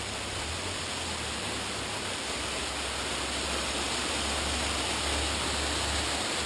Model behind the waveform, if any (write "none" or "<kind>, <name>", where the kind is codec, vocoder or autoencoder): none